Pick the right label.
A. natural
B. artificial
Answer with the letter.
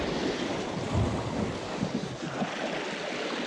A